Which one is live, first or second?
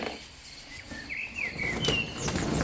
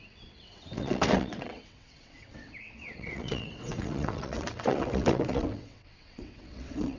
first